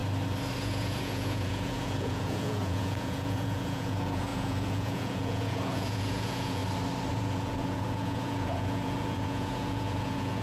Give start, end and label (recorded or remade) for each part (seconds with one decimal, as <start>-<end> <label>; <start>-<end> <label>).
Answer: 0.0-0.6 recorded; 0.6-6.6 remade; 6.6-7.1 recorded; 7.1-10.4 remade